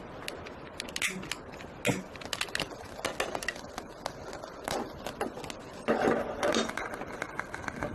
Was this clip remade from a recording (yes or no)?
no